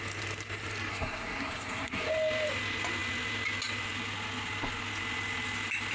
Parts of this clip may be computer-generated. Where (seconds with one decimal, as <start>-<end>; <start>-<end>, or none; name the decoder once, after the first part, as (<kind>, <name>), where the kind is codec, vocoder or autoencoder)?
0.9-2.1 (codec, SNAC)